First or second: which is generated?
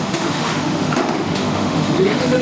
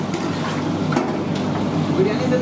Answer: first